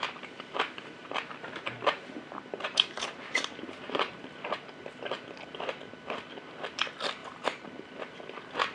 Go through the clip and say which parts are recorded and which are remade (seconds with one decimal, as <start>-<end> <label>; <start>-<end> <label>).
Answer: 0.0-1.0 recorded; 1.0-4.2 remade; 4.2-7.2 recorded; 7.2-8.0 remade; 8.0-8.7 recorded